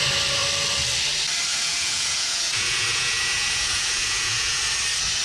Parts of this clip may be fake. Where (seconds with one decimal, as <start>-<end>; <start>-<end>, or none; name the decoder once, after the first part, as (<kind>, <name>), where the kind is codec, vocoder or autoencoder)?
1.5-4.6 (vocoder, Vocos)